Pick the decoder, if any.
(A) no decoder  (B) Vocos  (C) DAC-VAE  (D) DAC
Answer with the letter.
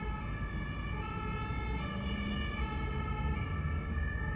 A